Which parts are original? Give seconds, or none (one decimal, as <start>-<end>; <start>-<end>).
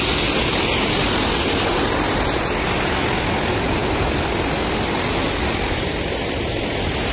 0.0-7.1